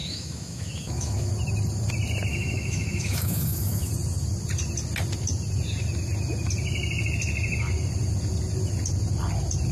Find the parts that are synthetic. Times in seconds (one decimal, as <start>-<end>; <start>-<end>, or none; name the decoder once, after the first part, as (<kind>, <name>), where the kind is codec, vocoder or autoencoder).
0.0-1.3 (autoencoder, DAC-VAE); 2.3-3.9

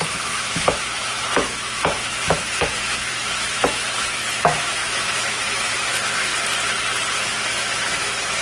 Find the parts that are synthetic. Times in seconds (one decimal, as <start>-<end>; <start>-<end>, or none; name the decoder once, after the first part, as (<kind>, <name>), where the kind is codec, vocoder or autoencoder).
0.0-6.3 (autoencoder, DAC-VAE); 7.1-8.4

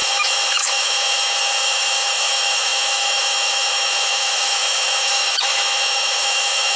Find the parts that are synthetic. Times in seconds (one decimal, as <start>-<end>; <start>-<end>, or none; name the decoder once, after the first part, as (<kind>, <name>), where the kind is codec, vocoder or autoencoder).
0.0-6.8 (autoencoder, DAC-VAE)

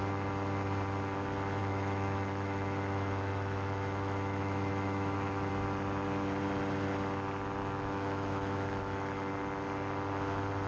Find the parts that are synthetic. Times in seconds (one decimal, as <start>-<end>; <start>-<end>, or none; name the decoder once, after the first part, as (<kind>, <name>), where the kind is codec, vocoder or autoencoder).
1.6-5.5 (autoencoder, DAC-VAE); 7.6-9.3

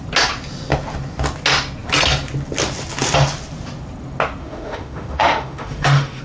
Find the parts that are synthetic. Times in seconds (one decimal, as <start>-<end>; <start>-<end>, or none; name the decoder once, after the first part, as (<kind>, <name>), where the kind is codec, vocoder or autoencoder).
4.4-6.2 (autoencoder, DAC-VAE)